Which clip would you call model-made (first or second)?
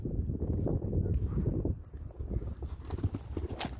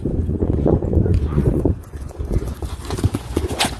second